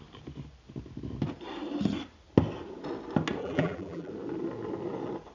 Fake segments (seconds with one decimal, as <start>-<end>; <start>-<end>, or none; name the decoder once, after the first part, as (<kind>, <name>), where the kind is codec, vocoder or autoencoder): 3.4-4.1 (vocoder, BigVGAN v2)